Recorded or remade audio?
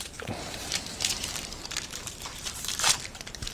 remade